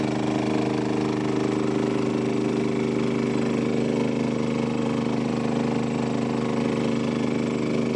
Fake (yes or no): no